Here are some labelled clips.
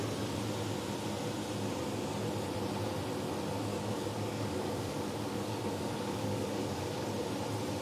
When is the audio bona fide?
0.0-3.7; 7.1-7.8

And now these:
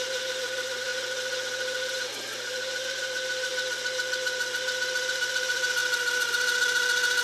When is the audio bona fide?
0.9-1.9; 3.5-5.1

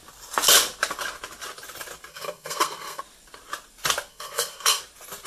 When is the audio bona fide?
0.0-2.1; 3.0-4.1; 4.8-5.3

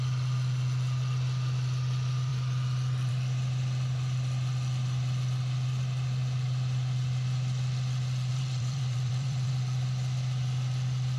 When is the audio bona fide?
0.0-8.3; 9.5-11.2